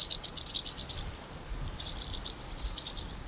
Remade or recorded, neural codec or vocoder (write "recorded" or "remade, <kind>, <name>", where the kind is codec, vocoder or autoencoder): recorded